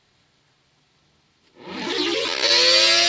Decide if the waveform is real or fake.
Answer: real